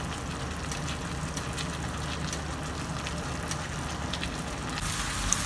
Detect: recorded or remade recorded